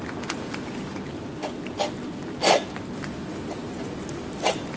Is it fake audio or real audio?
real